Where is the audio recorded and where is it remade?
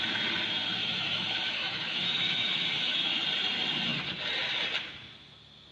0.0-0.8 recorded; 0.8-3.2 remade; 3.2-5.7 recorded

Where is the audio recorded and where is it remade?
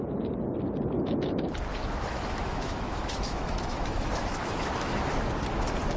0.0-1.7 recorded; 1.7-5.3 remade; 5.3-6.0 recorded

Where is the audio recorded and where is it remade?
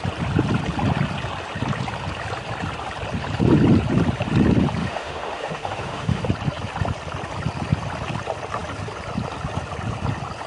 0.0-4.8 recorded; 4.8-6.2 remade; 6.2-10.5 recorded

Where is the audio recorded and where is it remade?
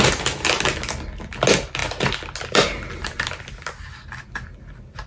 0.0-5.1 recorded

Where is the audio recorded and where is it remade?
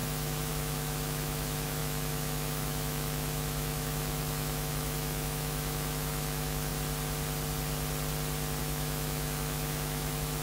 0.0-6.7 remade; 6.7-8.6 recorded; 8.6-10.4 remade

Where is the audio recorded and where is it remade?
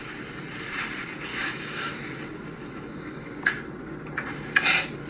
0.0-1.3 recorded; 1.3-1.9 remade; 1.9-2.6 recorded; 2.6-3.3 remade; 3.3-5.1 recorded